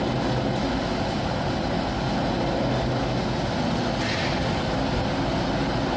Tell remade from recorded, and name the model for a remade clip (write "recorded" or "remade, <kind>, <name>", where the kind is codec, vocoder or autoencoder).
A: recorded